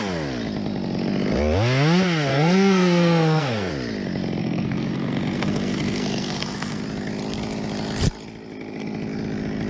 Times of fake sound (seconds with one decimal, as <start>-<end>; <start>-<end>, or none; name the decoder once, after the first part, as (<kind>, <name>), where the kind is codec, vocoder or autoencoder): 2.3-3.7 (codec, SNAC); 4.4-6.8